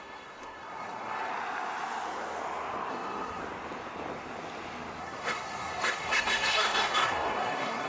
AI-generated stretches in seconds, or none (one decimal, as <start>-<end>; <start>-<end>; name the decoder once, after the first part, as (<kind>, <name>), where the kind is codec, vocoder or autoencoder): 0.0-1.3 (codec, SNAC); 2.9-3.4; 5.0-7.9